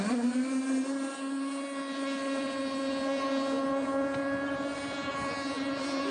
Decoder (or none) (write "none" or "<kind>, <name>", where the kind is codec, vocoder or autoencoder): none